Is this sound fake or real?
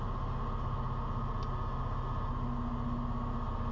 real